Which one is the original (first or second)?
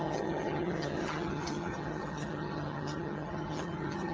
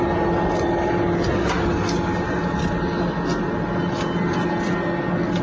second